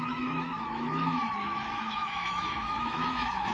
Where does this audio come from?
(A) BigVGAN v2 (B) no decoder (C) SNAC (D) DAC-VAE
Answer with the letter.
D